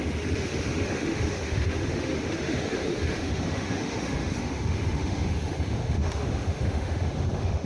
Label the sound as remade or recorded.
remade